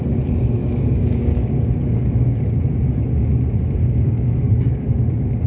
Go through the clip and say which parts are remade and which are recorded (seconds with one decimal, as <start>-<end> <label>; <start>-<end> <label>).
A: 0.0-0.6 recorded; 0.6-2.4 remade; 2.4-3.8 recorded; 3.8-5.0 remade; 5.0-5.5 recorded

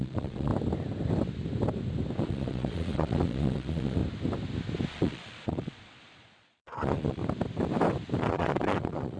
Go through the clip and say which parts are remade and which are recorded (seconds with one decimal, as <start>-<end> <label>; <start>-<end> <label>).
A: 0.0-0.5 remade; 0.5-2.2 recorded; 2.2-4.0 remade; 4.0-4.9 recorded; 4.9-7.2 remade; 7.2-8.2 recorded; 8.2-9.2 remade

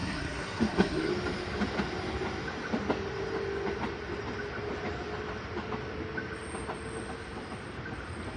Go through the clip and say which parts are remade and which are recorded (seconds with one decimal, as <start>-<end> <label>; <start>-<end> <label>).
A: 0.0-1.1 remade; 1.1-8.4 recorded

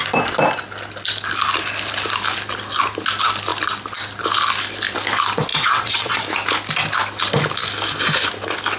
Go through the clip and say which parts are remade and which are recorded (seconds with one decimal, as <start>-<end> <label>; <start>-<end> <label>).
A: 0.0-5.5 recorded; 5.5-6.2 remade; 6.2-8.8 recorded